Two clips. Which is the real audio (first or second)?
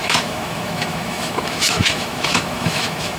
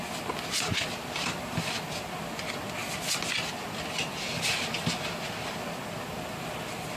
second